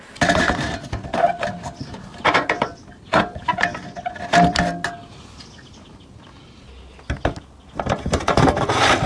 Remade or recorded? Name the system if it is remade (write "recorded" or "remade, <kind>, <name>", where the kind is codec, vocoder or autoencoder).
recorded